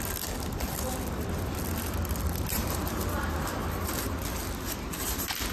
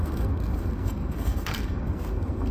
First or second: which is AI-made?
second